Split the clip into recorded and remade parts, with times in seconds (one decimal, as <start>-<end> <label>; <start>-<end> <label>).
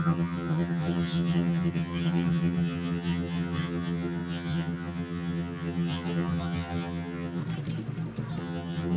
0.0-7.4 remade; 7.4-8.4 recorded; 8.4-9.0 remade